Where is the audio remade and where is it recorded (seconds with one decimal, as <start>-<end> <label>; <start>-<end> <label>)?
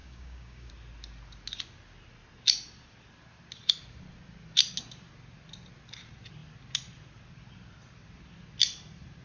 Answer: 0.0-0.7 remade; 0.7-9.2 recorded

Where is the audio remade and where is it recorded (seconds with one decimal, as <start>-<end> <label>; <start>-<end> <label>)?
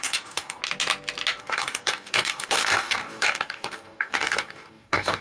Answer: 0.0-0.6 remade; 0.6-1.4 recorded; 1.4-5.2 remade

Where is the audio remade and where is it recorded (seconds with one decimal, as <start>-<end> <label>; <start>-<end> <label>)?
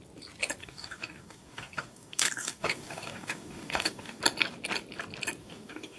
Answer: 0.0-0.6 recorded; 0.6-4.2 remade; 4.2-5.4 recorded; 5.4-6.0 remade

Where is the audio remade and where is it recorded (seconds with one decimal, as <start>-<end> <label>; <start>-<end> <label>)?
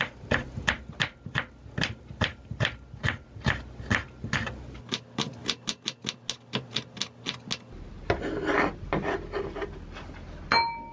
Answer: 0.0-10.9 recorded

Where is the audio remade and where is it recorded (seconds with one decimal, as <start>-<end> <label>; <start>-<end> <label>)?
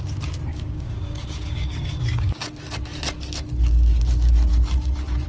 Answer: 0.0-0.5 recorded; 0.5-2.4 remade; 2.4-5.3 recorded